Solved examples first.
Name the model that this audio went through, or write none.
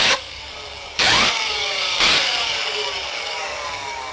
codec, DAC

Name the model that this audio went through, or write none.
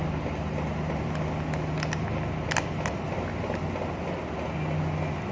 none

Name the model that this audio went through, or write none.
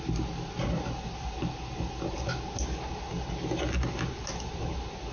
none